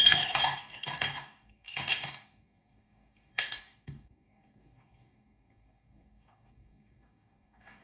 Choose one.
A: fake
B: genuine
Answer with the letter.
A